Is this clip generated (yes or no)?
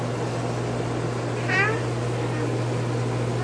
no